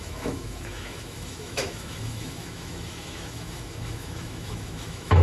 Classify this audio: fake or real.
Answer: fake